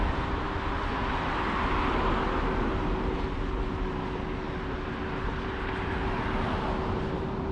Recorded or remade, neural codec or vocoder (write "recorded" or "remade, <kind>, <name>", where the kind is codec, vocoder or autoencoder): recorded